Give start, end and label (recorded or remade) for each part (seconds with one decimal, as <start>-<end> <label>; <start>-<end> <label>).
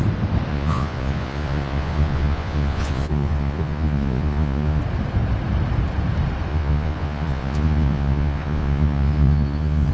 0.0-0.5 recorded; 0.5-4.8 remade; 4.8-6.5 recorded; 6.5-9.9 remade